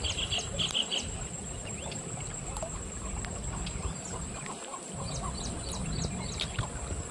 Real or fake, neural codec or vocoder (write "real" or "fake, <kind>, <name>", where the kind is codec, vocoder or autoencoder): real